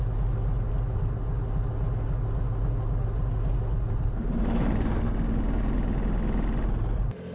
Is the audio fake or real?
real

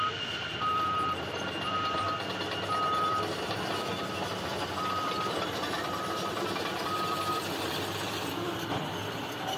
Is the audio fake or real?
fake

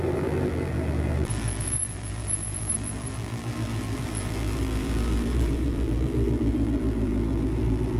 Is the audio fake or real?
fake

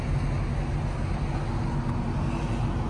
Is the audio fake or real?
real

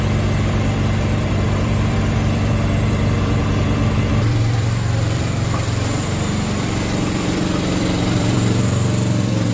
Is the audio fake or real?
fake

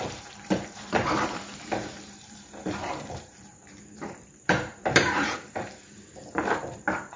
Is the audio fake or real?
fake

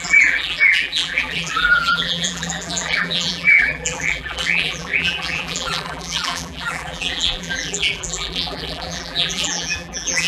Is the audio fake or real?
fake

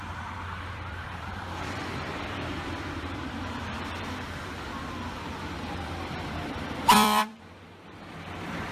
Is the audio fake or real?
fake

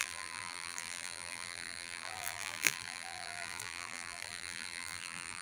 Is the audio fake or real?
fake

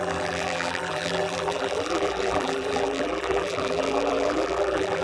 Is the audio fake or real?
fake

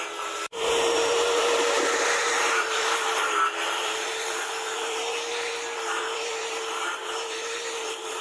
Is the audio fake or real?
fake